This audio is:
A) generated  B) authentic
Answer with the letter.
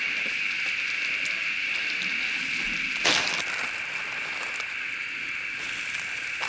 B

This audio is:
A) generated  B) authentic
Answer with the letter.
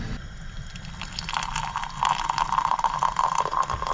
A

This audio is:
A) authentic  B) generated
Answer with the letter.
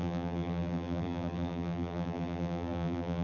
B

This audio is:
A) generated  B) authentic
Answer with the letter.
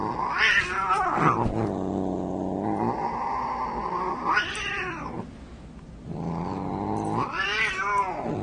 B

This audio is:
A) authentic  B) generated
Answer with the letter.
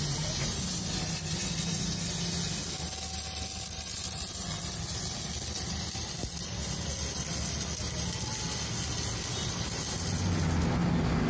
A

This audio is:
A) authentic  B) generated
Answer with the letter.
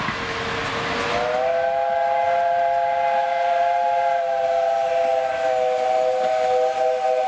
A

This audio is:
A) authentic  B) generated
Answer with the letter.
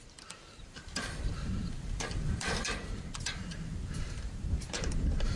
B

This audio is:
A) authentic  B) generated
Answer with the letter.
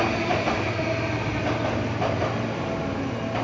A